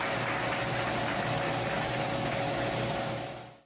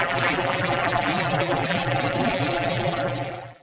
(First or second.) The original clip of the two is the first